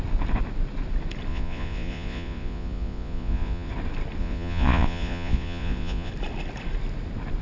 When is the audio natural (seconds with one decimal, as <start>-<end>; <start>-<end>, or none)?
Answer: 0.0-1.3; 3.7-4.2; 6.1-7.4